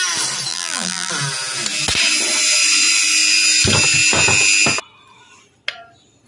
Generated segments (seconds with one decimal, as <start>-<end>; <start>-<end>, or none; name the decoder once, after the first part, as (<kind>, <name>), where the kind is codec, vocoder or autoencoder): 0.5-1.1 (vocoder, BigVGAN v2)